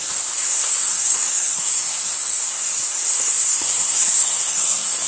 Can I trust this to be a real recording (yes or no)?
no